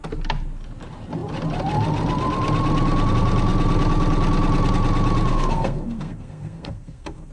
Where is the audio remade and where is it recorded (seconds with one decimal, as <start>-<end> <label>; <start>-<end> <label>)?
0.0-5.3 recorded; 5.3-7.3 remade